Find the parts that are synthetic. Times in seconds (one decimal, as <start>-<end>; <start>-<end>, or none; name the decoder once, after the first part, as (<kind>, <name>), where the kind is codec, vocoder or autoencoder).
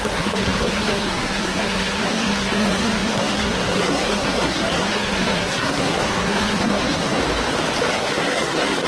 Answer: 0.0-7.2 (codec, SNAC); 7.9-8.9